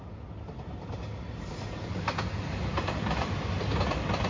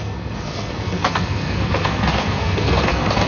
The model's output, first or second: second